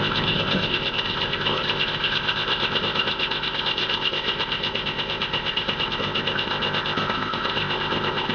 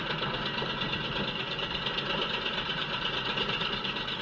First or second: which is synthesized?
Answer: first